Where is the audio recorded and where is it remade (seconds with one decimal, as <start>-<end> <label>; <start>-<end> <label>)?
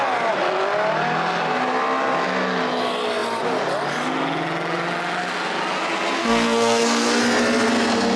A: 0.0-6.2 recorded; 6.2-7.2 remade; 7.2-8.2 recorded